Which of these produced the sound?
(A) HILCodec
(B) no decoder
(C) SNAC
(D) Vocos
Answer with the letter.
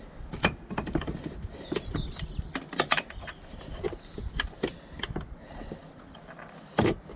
B